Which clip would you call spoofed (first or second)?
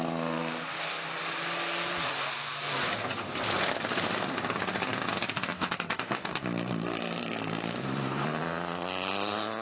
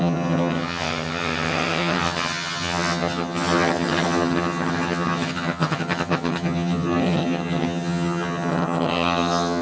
second